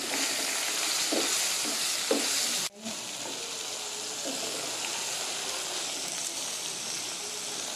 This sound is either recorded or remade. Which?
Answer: recorded